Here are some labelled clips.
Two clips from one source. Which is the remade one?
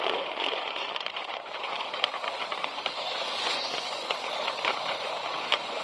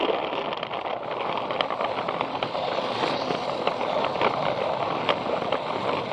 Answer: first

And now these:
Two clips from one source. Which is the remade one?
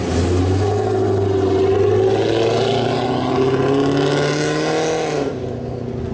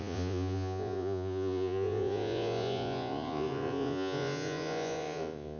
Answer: second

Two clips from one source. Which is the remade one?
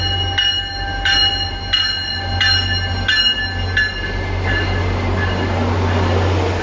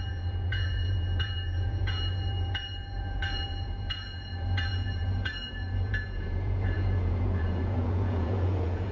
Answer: second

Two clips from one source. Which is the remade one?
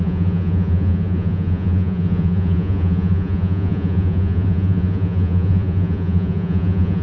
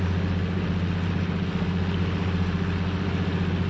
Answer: first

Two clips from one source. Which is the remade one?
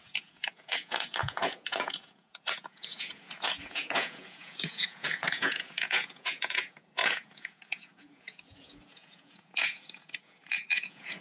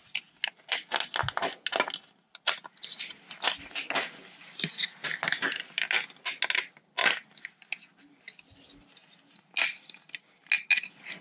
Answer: first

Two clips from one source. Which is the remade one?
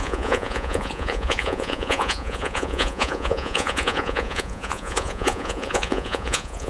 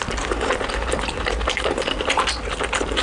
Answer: first